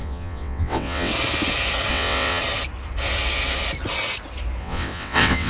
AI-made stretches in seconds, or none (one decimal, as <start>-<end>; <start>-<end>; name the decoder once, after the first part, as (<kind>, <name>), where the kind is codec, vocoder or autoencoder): 0.0-1.1 (vocoder, WaveNeXt); 1.9-2.4; 4.6-5.5